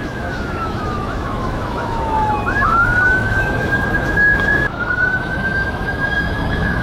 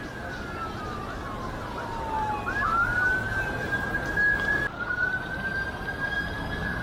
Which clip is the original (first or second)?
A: second